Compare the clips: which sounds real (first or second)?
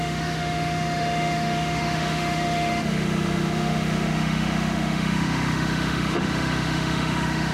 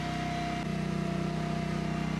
second